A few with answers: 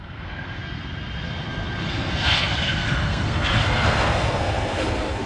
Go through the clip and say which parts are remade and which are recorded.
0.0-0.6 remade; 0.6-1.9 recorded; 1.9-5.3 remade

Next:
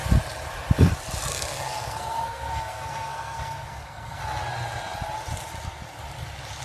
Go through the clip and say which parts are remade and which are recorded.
0.0-1.3 recorded; 1.3-4.2 remade; 4.2-6.6 recorded

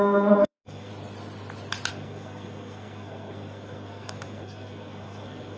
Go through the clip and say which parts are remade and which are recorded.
0.0-0.9 remade; 0.9-1.9 recorded; 1.9-5.6 remade

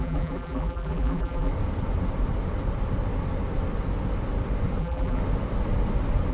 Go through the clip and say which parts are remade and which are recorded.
0.0-1.5 remade; 1.5-4.8 recorded; 4.8-5.2 remade; 5.2-6.3 recorded